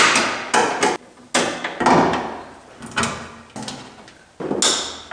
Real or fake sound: real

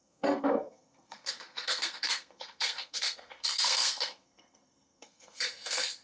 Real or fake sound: fake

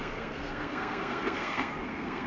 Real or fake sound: fake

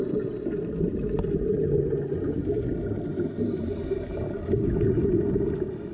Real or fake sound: real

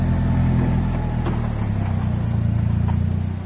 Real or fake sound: real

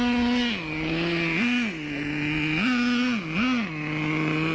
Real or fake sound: real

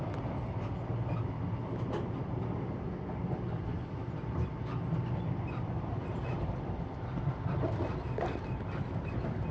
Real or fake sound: real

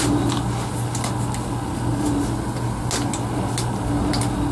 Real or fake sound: real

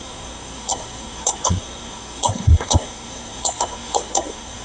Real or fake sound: fake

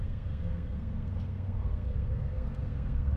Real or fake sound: fake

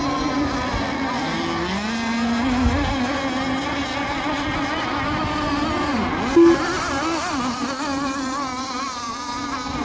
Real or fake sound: real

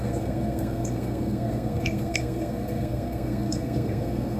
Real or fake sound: fake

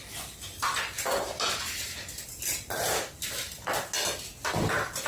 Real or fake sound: real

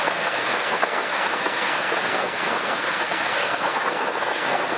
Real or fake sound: fake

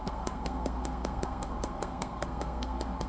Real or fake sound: fake